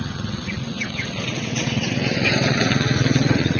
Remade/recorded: remade